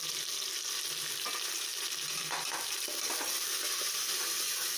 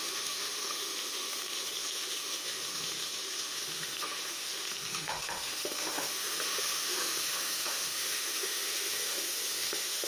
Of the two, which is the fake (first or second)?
second